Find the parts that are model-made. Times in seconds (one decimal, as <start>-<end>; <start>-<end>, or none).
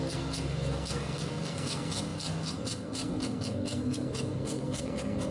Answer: 0.0-5.3